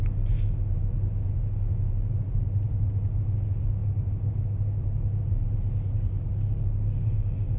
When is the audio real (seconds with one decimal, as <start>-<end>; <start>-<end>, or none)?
0.0-7.6